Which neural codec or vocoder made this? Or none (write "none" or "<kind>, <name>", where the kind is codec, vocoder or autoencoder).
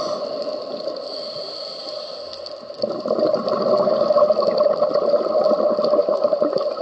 none